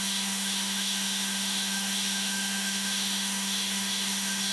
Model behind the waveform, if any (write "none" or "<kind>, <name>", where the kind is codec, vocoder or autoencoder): autoencoder, DAC-VAE